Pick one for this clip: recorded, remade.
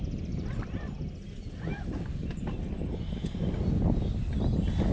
recorded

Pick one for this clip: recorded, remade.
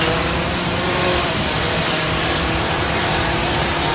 remade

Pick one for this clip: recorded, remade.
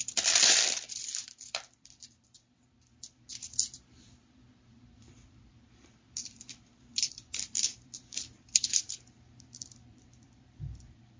remade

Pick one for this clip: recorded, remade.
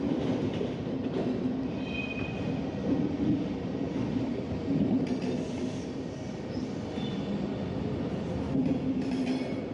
remade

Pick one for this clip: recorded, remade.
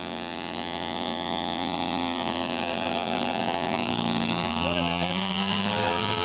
remade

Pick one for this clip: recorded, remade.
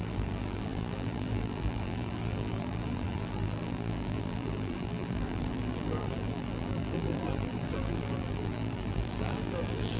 remade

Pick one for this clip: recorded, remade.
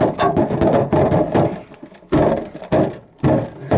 recorded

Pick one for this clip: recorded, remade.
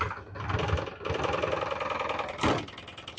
recorded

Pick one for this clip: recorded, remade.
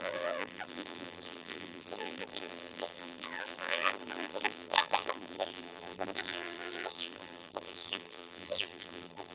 remade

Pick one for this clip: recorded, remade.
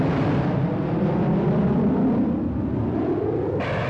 recorded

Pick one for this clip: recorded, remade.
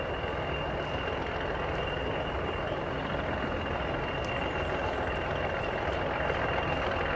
recorded